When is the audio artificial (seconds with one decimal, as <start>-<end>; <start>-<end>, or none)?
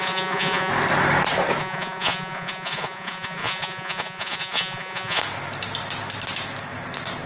0.0-0.7; 1.6-5.2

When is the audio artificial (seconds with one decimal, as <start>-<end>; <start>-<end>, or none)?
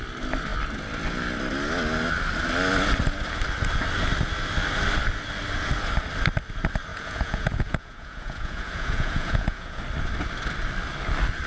6.9-9.8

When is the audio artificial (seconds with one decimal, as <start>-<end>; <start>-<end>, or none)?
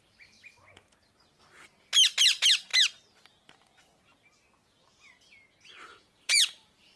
5.9-7.0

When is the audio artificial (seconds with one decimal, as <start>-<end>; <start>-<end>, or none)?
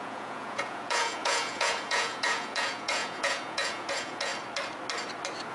0.0-4.3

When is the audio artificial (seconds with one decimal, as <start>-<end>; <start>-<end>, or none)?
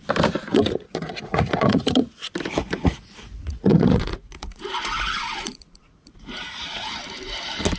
0.5-2.2; 2.6-6.9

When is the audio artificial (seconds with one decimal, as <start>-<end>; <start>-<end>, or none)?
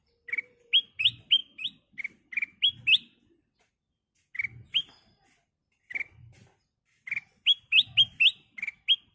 none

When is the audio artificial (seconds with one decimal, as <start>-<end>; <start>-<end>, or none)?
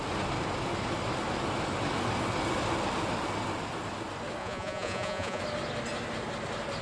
4.4-5.4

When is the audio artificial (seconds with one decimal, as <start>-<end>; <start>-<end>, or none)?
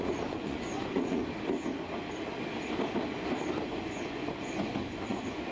0.0-1.2; 3.6-5.5